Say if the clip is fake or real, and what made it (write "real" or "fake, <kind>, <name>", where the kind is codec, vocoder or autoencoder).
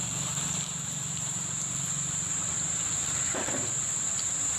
fake, vocoder, BigVGAN v2